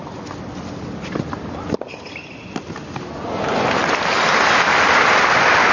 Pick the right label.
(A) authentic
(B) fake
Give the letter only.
A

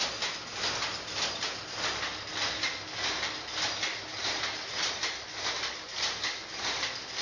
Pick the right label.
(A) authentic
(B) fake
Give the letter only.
A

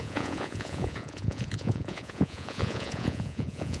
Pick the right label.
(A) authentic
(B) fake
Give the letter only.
B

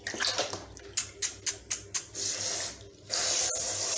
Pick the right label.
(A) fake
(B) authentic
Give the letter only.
B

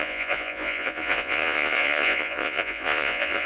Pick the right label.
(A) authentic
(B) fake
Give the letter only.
B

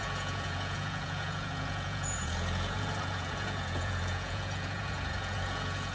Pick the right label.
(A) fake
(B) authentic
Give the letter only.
A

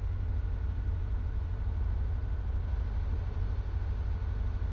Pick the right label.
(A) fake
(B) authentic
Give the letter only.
B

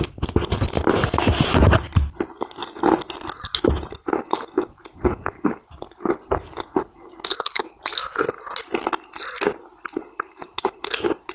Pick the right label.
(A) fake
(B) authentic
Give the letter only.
B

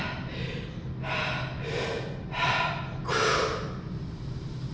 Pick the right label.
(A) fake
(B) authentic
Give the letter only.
B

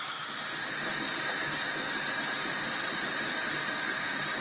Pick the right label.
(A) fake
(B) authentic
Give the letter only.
B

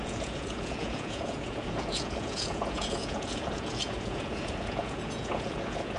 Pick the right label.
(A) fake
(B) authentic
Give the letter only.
A